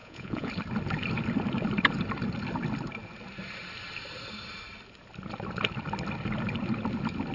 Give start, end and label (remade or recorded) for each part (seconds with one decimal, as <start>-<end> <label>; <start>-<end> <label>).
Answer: 0.0-0.5 remade; 0.5-7.3 recorded